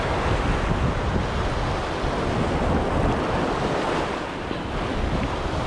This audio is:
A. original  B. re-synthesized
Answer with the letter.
A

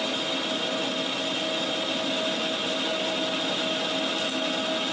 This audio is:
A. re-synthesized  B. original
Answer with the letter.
B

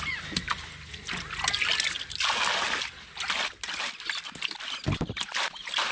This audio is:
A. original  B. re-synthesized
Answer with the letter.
A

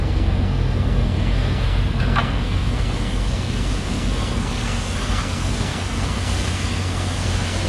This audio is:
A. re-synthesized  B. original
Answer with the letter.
A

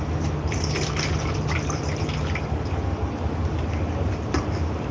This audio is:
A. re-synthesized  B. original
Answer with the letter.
B